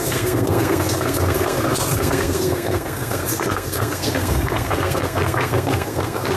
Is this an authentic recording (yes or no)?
no